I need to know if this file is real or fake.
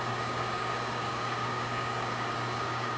fake